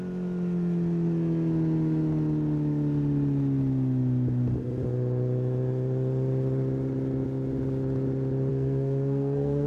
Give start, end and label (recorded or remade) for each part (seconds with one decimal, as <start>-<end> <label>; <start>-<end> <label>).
0.0-8.5 recorded; 8.5-9.7 remade